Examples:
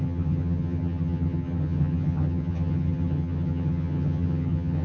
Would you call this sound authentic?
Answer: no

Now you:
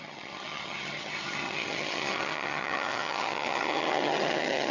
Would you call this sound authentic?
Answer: no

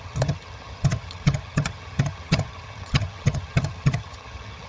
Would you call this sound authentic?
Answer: no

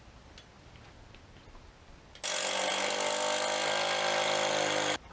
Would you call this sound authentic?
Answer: yes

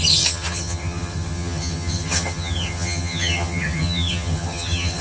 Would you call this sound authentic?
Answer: no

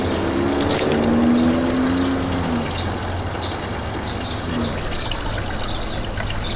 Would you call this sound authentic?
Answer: yes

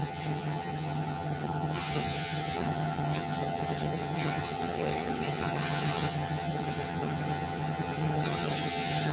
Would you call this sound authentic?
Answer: no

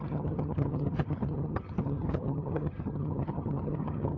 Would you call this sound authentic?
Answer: no